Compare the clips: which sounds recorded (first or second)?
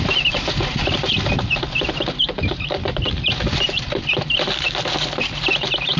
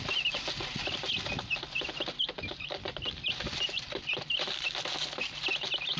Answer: second